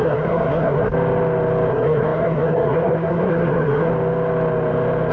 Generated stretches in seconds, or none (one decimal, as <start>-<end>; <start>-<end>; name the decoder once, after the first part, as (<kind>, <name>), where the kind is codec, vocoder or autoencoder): 0.0-0.9 (codec, SNAC); 1.7-3.9